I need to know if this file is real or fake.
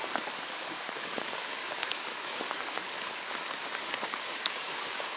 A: fake